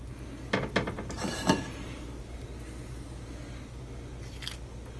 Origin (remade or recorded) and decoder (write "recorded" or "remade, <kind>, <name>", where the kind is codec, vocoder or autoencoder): recorded